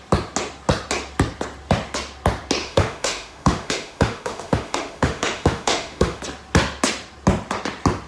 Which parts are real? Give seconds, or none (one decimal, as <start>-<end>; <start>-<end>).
0.0-2.6; 6.2-8.1